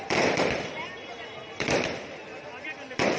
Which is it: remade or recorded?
remade